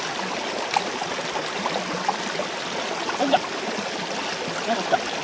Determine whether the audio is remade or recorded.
recorded